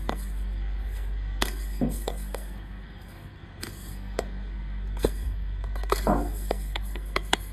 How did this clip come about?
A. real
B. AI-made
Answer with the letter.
B